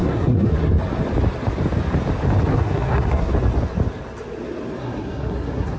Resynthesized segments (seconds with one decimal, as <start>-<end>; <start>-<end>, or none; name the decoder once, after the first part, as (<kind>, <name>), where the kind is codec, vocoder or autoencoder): 0.0-0.7 (codec, SNAC); 2.5-3.3; 4.8-5.8